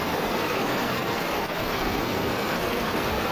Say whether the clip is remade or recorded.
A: remade